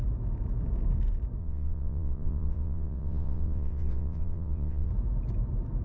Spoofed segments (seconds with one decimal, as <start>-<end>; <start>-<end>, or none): 1.4-4.9